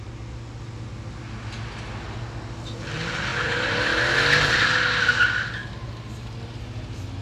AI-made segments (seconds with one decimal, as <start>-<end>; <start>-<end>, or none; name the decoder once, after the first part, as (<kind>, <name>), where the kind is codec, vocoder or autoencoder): none